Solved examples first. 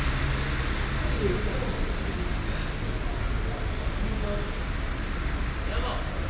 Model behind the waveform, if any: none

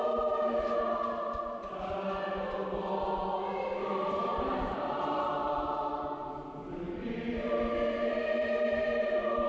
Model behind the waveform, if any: none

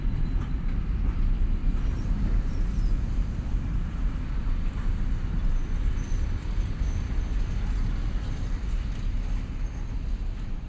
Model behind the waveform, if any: none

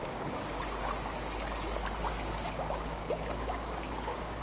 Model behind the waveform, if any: codec, DAC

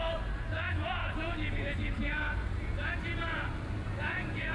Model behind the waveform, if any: none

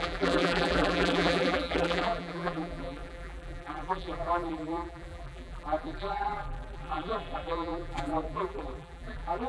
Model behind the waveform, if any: vocoder, BigVGAN v2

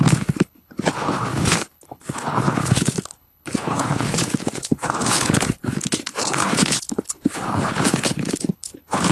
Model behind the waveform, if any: codec, HILCodec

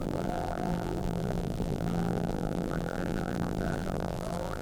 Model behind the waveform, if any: vocoder, BigVGAN v2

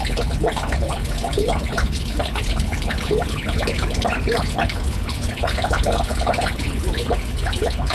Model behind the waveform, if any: codec, HILCodec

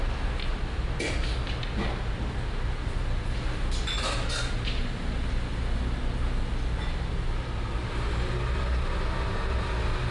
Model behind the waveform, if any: none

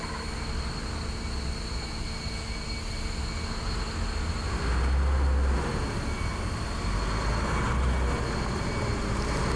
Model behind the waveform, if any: none